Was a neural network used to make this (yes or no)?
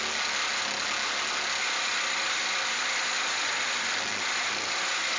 no